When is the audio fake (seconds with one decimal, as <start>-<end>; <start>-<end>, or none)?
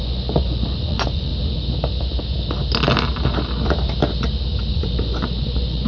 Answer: 0.0-1.3; 4.7-5.9